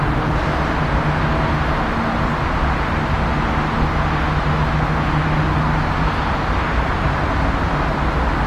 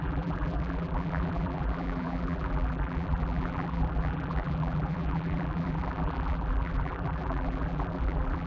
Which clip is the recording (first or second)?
first